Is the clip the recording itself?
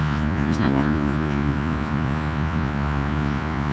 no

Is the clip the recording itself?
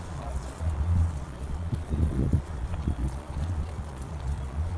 no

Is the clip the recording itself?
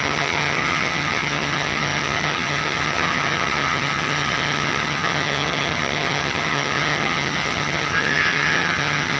no